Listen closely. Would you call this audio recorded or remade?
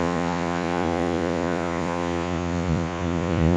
remade